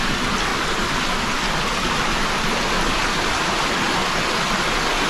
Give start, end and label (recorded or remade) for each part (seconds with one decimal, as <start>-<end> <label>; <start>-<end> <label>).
0.0-5.1 recorded